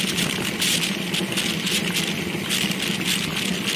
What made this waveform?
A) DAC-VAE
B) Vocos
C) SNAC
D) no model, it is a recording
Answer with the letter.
D